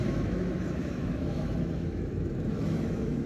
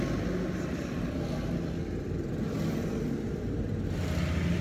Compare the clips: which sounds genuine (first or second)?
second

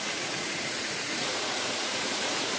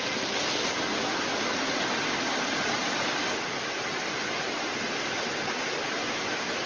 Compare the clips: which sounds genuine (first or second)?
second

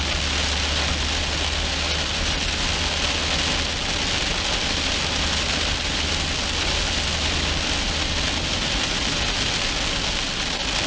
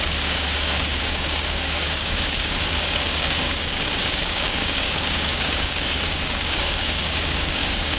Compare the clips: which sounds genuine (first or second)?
first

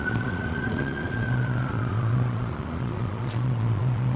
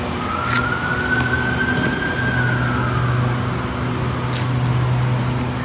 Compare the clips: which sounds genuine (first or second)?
second